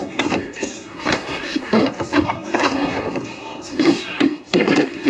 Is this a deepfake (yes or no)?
yes